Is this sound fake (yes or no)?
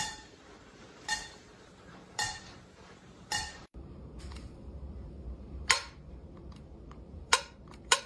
yes